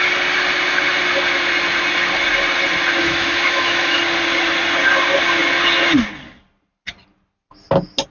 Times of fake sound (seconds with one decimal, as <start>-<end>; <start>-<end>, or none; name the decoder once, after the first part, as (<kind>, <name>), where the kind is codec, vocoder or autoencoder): 3.0-4.0 (autoencoder, DAC-VAE)